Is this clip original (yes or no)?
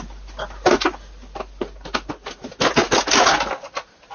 yes